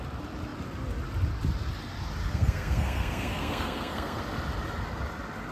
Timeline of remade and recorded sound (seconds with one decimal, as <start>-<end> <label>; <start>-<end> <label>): 0.0-2.2 recorded; 2.2-4.2 remade; 4.2-5.5 recorded